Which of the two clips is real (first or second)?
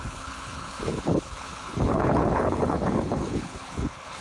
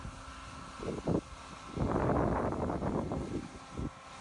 second